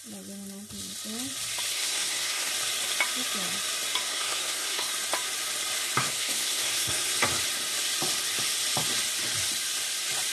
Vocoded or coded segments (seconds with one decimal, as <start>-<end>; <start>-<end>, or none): 1.7-2.5; 4.1-4.9; 6.0-7.1

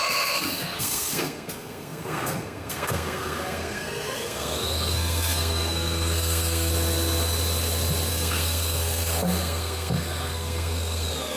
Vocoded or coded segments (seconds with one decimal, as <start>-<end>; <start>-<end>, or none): 0.0-6.7; 8.1-11.4

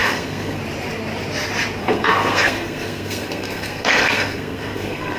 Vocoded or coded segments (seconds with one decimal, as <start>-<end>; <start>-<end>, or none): 0.0-0.6; 1.8-5.2

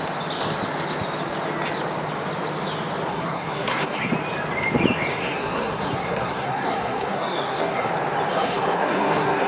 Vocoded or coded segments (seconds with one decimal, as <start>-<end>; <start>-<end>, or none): 3.1-4.1; 5.1-7.9; 8.3-9.5

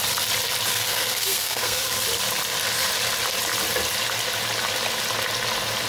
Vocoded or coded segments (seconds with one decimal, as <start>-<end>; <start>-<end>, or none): 0.7-2.0

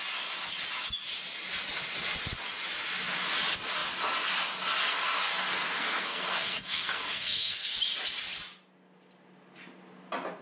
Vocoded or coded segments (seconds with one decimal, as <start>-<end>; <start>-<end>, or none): 4.8-7.8

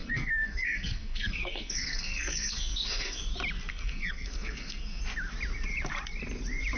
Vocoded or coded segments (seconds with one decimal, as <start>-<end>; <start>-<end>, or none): 0.0-3.2; 3.7-5.0